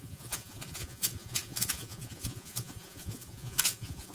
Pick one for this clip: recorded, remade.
remade